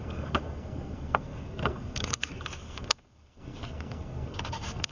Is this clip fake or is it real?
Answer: fake